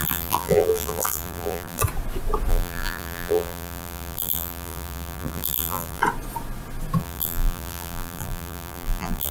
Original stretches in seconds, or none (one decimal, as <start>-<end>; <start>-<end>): 1.8-2.5; 6.0-7.0